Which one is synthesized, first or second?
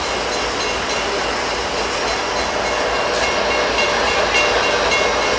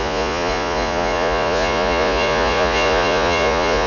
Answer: second